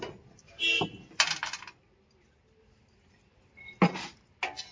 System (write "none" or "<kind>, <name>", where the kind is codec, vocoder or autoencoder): none